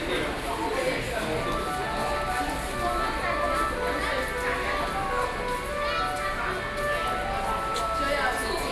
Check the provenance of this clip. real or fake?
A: real